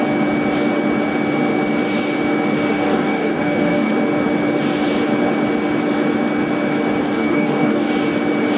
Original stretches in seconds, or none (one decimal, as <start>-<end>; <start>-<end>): 0.0-2.7; 3.9-7.0; 7.9-8.6